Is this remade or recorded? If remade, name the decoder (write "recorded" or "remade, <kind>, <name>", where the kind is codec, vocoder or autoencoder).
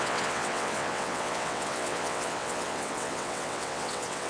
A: remade, vocoder, WaveNeXt